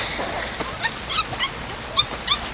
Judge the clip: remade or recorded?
recorded